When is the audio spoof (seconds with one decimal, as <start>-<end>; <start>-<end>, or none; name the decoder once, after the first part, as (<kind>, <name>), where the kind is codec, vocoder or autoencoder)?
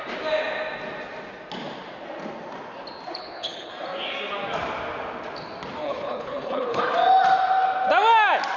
3.2-3.7 (codec, HILCodec); 5.8-6.8